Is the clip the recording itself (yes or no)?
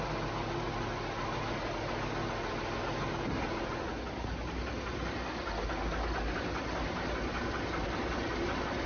yes